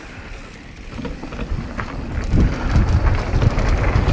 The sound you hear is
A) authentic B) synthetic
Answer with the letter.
A